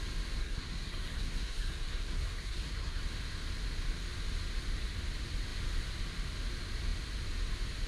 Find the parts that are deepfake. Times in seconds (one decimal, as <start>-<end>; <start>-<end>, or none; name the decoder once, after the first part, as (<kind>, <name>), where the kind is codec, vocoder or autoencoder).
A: 0.4-3.0 (codec, SNAC)